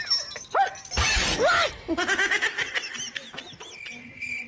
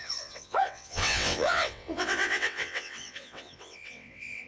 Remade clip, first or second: second